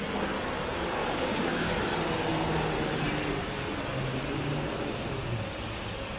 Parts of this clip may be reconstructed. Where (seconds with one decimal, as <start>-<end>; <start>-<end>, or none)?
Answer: 1.0-1.7